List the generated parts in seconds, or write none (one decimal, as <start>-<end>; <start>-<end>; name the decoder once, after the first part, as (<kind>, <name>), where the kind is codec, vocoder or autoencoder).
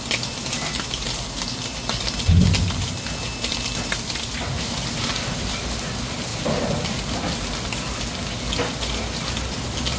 3.5-4.7 (vocoder, BigVGAN v2); 6.3-7.0